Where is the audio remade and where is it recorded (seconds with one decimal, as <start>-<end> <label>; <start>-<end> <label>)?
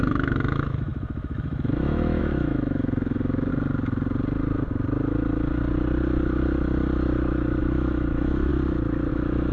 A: 0.0-3.5 remade; 3.5-7.6 recorded; 7.6-8.5 remade; 8.5-9.1 recorded; 9.1-9.5 remade